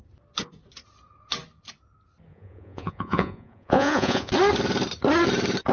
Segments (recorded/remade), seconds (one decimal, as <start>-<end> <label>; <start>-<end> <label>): 0.0-2.3 recorded; 2.3-4.3 remade; 4.3-5.7 recorded

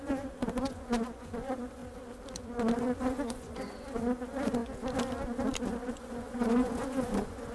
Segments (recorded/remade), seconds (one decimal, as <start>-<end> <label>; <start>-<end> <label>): 0.0-1.8 remade; 1.8-2.3 recorded; 2.3-4.6 remade; 4.6-5.9 recorded; 5.9-7.5 remade

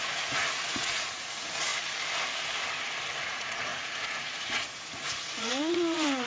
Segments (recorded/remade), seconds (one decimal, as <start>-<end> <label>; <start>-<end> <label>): 0.0-1.7 remade; 1.7-3.2 recorded; 3.2-6.3 remade